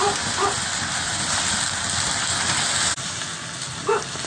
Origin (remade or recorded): recorded